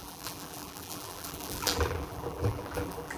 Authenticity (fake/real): fake